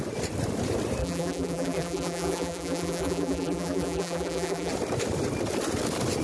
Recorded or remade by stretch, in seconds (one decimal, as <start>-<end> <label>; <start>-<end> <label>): 0.0-1.0 recorded; 1.0-4.7 remade; 4.7-6.2 recorded